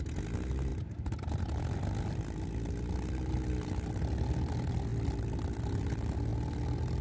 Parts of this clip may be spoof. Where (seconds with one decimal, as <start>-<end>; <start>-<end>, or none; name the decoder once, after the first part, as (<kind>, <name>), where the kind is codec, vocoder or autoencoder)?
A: none